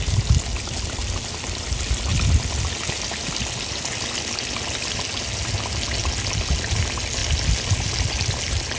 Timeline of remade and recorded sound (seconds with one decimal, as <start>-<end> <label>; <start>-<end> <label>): 0.0-8.8 recorded